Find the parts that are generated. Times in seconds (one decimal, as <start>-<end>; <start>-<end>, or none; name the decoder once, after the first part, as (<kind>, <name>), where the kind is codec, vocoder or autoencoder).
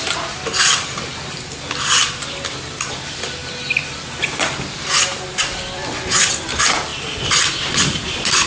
0.0-3.4 (vocoder, BigVGAN v2); 4.1-8.5